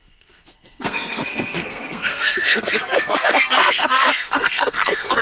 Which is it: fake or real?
fake